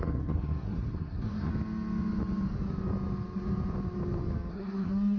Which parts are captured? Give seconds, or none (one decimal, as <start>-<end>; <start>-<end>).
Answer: 1.5-4.5